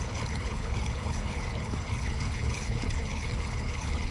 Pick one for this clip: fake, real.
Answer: fake